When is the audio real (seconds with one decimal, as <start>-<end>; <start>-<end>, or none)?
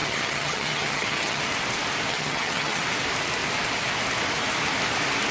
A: 1.4-2.1; 2.8-5.3